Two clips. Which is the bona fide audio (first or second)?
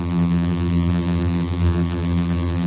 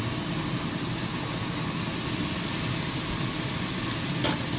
second